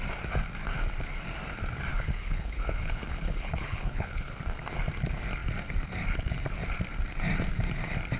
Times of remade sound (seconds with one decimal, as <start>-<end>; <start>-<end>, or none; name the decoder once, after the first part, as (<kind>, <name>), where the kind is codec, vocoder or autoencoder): 1.9-4.3 (codec, HILCodec)